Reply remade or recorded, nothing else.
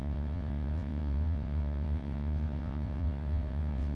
remade